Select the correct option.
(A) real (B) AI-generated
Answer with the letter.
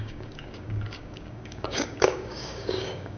B